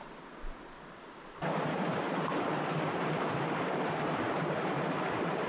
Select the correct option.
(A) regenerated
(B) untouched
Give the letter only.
B